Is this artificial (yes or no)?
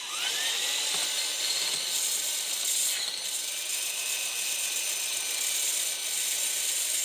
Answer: no